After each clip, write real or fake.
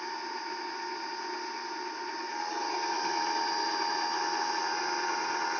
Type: real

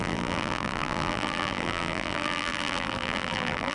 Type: fake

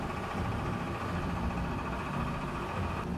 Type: real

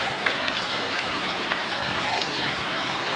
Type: fake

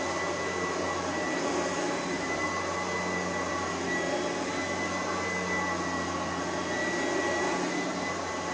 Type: real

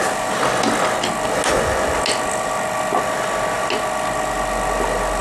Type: real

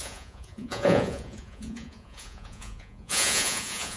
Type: fake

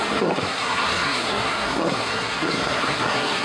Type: fake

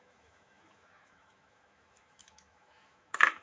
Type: fake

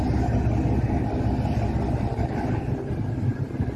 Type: real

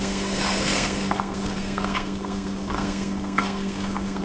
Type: fake